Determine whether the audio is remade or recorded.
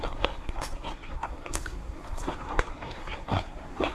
remade